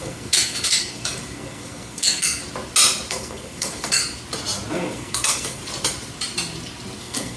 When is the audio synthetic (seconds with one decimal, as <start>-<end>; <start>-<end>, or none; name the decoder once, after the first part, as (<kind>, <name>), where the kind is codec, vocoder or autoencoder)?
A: 0.0-2.4 (codec, SNAC); 3.1-4.0; 4.7-5.6; 7.0-7.4